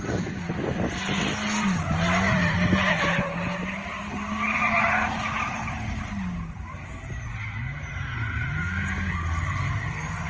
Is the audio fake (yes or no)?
no